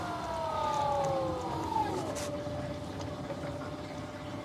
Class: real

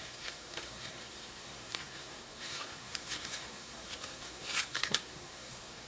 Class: fake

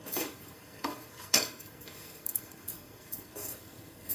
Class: fake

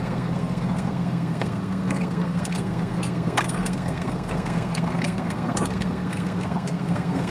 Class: fake